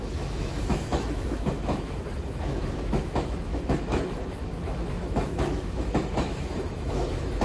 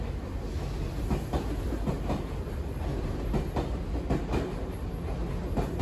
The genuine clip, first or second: second